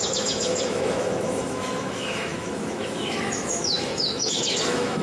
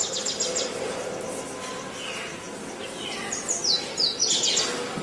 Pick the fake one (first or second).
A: first